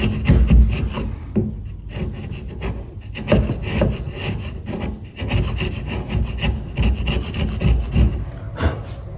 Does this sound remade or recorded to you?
recorded